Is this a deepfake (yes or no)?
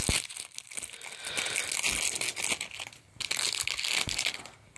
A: no